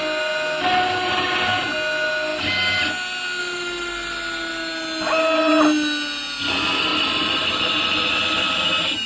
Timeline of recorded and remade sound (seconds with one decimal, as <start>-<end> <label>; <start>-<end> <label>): 0.0-6.9 recorded; 6.9-8.6 remade; 8.6-9.1 recorded